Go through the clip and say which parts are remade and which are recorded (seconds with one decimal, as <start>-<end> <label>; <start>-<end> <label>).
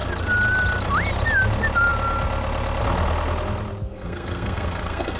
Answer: 0.0-3.9 recorded; 3.9-5.2 remade